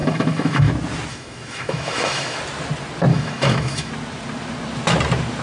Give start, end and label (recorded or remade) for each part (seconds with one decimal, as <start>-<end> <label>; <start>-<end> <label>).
0.0-0.7 remade; 0.7-1.1 recorded; 1.1-2.4 remade; 2.4-3.1 recorded; 3.1-3.9 remade; 3.9-5.4 recorded